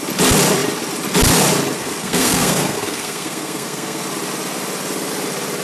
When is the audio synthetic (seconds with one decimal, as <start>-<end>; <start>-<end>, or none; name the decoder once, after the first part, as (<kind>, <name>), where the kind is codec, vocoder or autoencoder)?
1.8-4.0 (codec, SNAC)